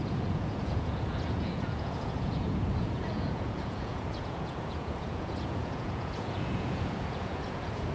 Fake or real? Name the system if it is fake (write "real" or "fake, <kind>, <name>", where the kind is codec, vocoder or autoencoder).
fake, vocoder, Vocos